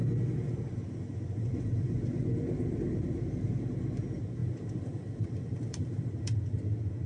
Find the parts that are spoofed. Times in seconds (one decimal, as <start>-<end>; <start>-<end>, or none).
4.4-6.3